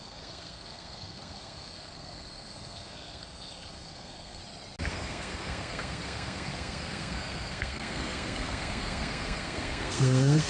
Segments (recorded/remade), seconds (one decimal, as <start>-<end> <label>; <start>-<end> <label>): 0.0-4.4 remade; 4.4-4.9 recorded; 4.9-10.5 remade